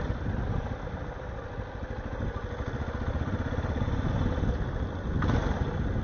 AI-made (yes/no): no